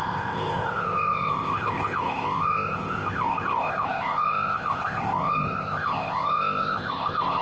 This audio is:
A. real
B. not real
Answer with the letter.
B